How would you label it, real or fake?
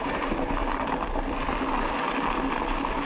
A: real